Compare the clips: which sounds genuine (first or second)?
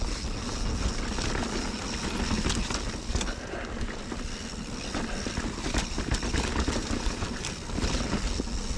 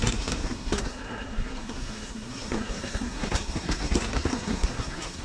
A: first